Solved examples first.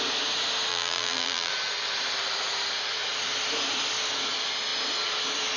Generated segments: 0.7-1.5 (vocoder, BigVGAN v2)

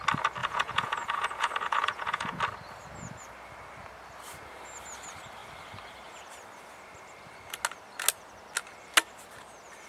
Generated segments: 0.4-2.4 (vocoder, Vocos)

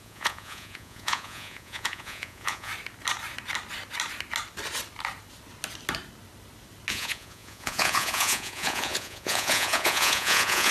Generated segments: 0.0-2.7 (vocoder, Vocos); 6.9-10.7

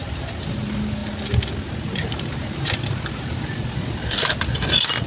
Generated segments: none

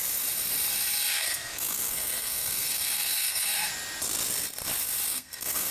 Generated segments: 1.1-3.7 (codec, SNAC); 5.1-5.7

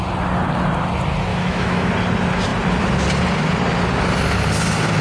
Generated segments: 1.3-1.9 (autoencoder, DAC-VAE)

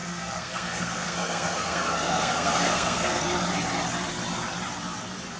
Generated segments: 0.0-3.2 (codec, SNAC)